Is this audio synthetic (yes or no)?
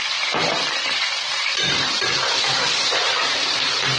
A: yes